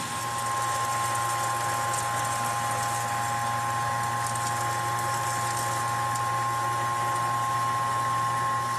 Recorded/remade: recorded